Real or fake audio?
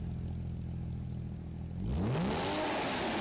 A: real